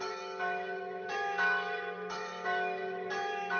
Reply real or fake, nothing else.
fake